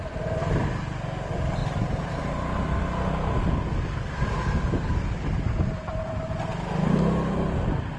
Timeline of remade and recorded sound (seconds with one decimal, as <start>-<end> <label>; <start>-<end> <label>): 0.0-1.6 recorded; 1.6-3.1 remade; 3.1-8.0 recorded